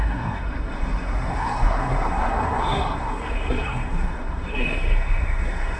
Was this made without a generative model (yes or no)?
no